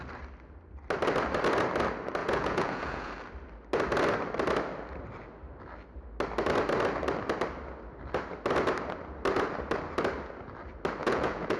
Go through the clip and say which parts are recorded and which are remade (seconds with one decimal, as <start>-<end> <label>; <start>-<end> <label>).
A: 0.0-2.2 recorded; 2.2-3.1 remade; 3.1-11.0 recorded; 11.0-11.6 remade